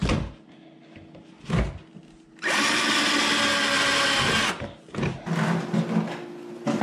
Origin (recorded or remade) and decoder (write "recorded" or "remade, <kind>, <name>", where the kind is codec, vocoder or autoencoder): recorded